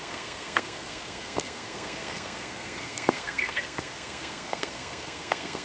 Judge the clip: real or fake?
fake